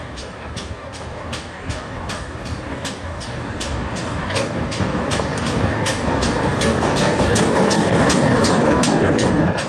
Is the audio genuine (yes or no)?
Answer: no